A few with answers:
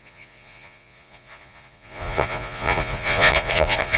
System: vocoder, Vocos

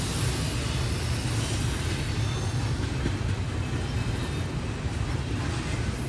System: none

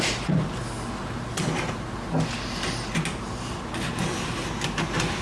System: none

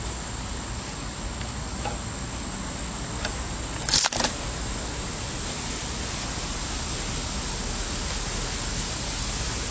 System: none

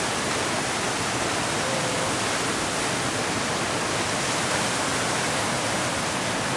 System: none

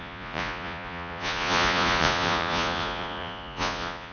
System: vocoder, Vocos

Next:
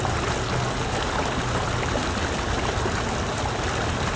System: none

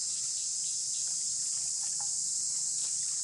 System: none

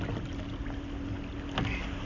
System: none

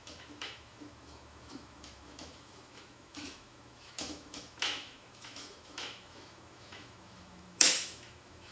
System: autoencoder, DAC-VAE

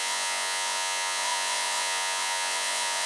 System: vocoder, Vocos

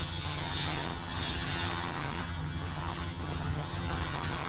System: vocoder, HiFi-GAN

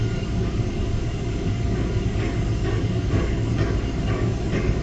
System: codec, DAC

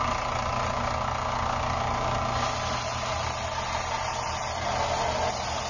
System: none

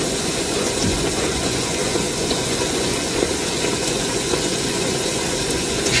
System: vocoder, Vocos